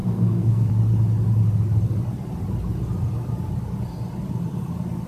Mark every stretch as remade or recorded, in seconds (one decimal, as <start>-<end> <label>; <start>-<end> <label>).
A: 0.0-0.7 remade; 0.7-5.1 recorded